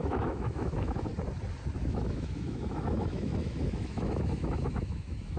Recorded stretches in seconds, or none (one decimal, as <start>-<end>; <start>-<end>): 1.1-1.8